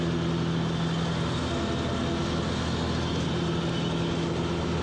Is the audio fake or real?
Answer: real